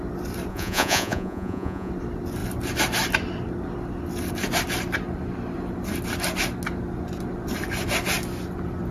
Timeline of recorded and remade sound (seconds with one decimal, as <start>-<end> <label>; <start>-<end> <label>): 0.0-0.5 recorded; 0.5-1.9 remade; 1.9-8.9 recorded

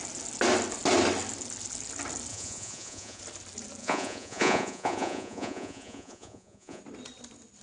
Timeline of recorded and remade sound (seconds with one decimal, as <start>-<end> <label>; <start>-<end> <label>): 0.0-2.3 recorded; 2.3-3.2 remade; 3.2-3.8 recorded; 3.8-6.8 remade; 6.8-7.6 recorded

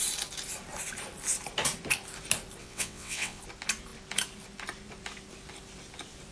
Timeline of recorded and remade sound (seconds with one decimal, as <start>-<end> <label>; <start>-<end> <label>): 0.0-2.6 recorded; 2.6-3.4 remade; 3.4-6.3 recorded

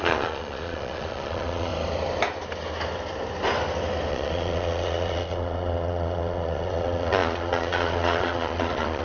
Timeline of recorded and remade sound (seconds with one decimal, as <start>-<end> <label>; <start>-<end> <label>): 0.0-1.7 remade; 1.7-4.1 recorded; 4.1-9.0 remade

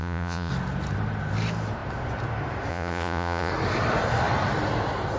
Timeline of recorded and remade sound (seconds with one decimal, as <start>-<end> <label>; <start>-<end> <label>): 0.0-0.5 remade; 0.5-2.7 recorded; 2.7-3.5 remade; 3.5-5.2 recorded